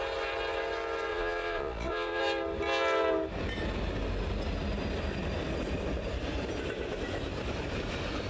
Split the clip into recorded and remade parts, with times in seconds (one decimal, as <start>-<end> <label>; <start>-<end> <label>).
0.0-1.1 recorded; 1.1-2.2 remade; 2.2-8.3 recorded